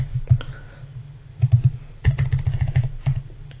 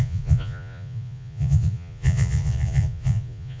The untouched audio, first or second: first